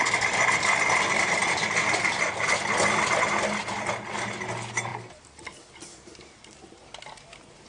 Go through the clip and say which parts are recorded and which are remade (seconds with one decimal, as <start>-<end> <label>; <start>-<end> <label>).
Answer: 0.0-7.7 recorded